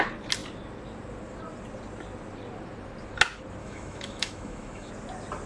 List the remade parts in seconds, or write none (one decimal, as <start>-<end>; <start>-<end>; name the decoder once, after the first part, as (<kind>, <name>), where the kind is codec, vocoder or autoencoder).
3.6-4.9 (autoencoder, DAC-VAE)